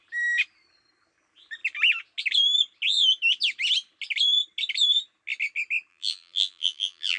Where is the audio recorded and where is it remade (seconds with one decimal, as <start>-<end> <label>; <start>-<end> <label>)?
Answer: 0.0-5.9 recorded; 5.9-7.2 remade